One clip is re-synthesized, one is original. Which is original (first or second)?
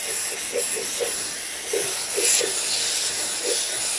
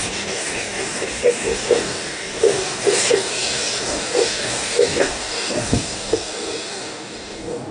first